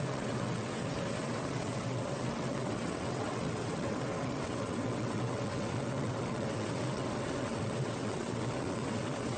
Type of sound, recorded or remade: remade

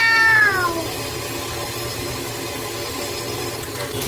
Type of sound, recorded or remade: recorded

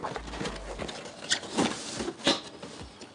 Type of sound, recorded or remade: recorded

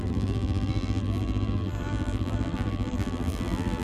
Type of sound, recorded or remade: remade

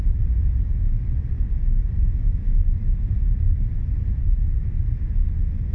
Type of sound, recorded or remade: recorded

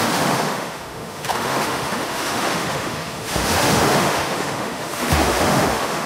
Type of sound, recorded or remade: remade